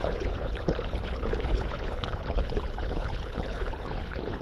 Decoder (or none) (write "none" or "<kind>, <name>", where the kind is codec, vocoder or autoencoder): codec, HILCodec